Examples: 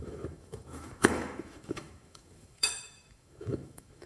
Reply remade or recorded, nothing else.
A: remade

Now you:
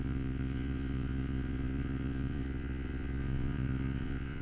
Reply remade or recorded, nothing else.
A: remade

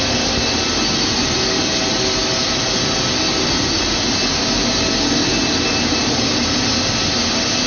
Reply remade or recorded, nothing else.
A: recorded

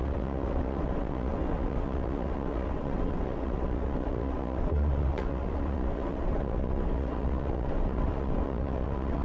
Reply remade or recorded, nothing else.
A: remade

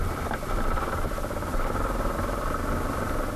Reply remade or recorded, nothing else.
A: recorded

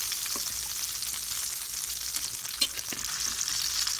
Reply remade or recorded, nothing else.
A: recorded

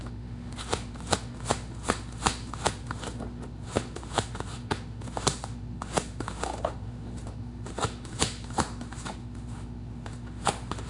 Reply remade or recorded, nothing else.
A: remade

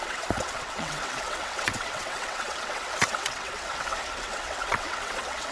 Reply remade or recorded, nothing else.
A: remade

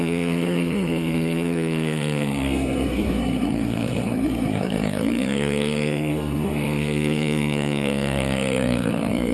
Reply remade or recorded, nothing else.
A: remade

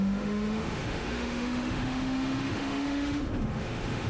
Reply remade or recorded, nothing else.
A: remade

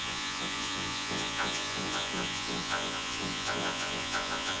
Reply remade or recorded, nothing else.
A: remade